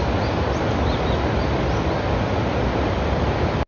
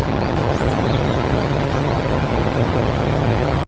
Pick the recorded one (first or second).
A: first